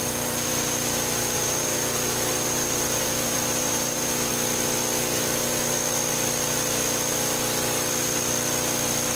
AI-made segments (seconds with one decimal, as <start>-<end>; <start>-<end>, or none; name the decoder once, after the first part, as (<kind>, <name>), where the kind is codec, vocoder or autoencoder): 0.0-4.3 (vocoder, BigVGAN v2)